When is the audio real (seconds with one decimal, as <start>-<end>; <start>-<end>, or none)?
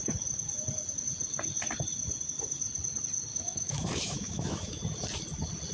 0.0-3.3; 4.8-5.7